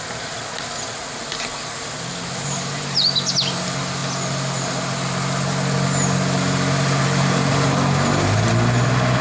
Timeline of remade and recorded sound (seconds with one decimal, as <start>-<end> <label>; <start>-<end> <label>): 0.0-9.2 recorded